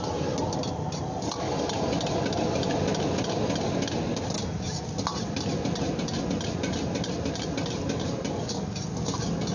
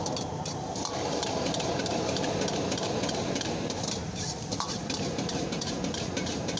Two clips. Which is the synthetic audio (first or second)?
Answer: second